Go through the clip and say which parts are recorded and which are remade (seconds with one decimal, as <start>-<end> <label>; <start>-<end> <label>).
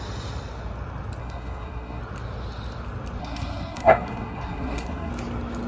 0.0-1.2 recorded; 1.2-2.0 remade; 2.0-3.2 recorded; 3.2-5.1 remade; 5.1-5.7 recorded